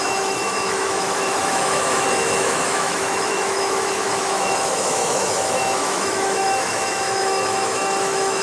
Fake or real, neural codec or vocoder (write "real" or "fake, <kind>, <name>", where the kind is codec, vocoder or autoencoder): fake, autoencoder, DAC-VAE